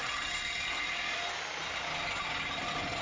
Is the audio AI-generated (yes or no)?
no